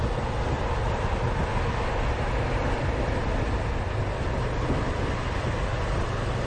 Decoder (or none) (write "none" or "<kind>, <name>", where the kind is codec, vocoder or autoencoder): none